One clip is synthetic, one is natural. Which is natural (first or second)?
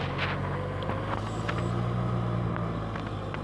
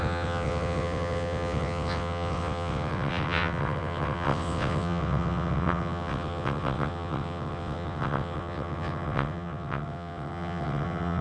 first